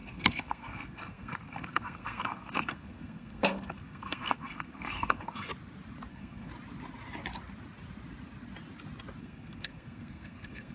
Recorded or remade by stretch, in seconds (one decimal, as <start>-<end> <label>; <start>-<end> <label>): 0.0-5.5 remade; 5.5-6.1 recorded; 6.1-6.5 remade; 6.5-9.2 recorded; 9.2-10.7 remade